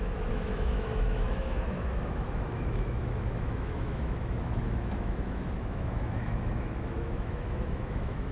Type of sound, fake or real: fake